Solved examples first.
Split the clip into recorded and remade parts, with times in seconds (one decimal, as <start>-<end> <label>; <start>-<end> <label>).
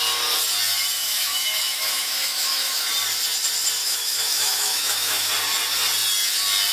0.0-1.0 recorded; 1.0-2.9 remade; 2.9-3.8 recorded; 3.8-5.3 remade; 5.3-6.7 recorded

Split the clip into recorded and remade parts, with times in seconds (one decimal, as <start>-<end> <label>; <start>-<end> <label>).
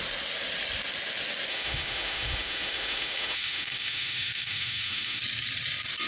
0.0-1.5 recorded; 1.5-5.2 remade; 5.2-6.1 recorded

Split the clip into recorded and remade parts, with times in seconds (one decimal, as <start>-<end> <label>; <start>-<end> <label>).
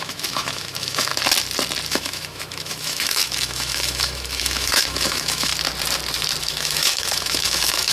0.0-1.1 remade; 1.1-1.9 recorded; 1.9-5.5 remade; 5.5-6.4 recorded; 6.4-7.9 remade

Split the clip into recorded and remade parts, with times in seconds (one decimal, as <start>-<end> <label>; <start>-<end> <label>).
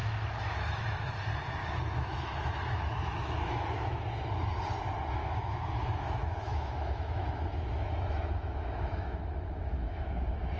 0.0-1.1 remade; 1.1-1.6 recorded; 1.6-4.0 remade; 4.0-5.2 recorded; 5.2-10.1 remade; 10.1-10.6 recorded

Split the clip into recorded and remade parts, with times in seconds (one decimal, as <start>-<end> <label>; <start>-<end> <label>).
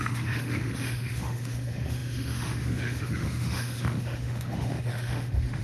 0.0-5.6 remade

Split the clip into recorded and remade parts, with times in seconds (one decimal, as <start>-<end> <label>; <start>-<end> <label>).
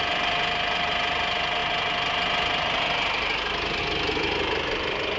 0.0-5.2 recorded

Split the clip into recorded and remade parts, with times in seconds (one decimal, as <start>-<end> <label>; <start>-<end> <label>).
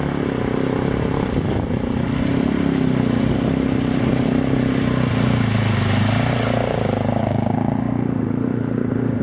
0.0-7.2 recorded; 7.2-9.2 remade